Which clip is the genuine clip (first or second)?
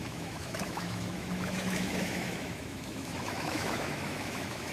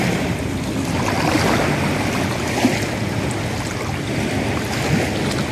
second